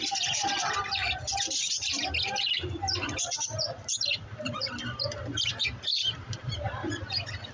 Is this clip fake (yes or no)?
yes